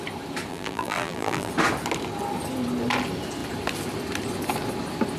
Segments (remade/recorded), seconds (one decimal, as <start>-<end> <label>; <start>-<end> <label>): 0.0-0.5 recorded; 0.5-1.5 remade; 1.5-5.2 recorded